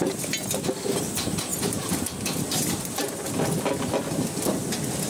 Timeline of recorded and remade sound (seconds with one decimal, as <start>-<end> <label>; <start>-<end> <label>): 0.0-5.1 recorded